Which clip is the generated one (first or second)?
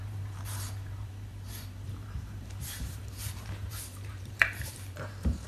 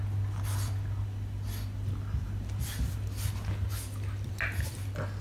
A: first